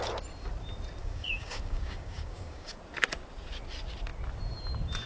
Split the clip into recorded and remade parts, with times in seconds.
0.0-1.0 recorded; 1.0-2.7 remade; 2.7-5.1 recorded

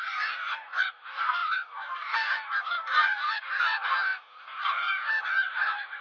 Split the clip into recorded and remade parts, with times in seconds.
0.0-6.0 remade

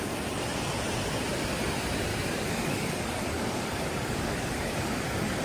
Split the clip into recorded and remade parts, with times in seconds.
0.0-2.1 recorded; 2.1-5.4 remade

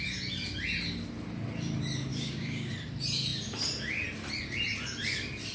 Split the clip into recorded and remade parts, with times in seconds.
0.0-2.1 recorded; 2.1-2.7 remade; 2.7-5.5 recorded

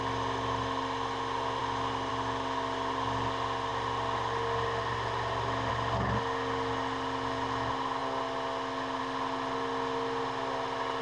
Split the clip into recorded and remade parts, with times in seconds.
0.0-11.0 recorded

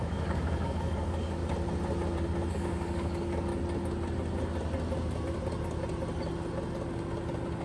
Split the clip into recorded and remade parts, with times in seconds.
0.0-1.4 remade; 1.4-2.5 recorded; 2.5-3.5 remade; 3.5-7.6 recorded

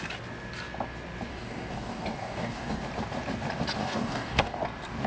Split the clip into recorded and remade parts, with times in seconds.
0.0-1.3 recorded; 1.3-2.8 remade; 2.8-3.8 recorded; 3.8-4.6 remade; 4.6-5.1 recorded